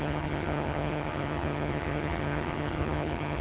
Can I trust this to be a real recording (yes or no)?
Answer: no